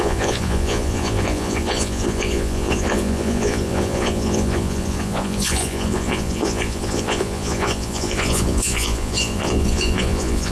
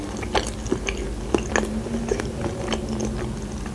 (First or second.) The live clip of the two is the second